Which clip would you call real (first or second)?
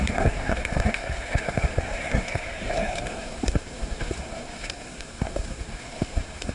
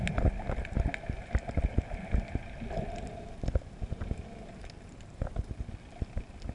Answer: second